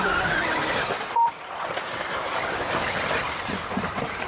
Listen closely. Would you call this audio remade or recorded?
recorded